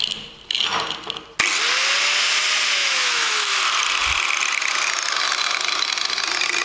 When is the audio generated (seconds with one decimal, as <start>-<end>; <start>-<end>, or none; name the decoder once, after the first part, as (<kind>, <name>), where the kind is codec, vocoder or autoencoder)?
2.8-3.6 (autoencoder, DAC-VAE)